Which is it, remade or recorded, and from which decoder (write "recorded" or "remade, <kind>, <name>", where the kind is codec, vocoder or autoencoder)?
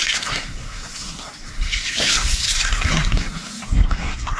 remade, codec, SNAC